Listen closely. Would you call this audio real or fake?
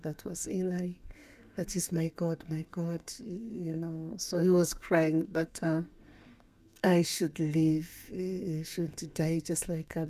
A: fake